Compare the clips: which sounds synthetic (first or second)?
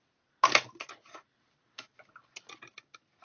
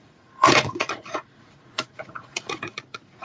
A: second